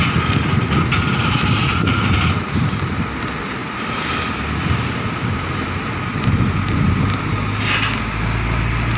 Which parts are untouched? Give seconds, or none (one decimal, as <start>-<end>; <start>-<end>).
0.0-1.6; 2.7-9.0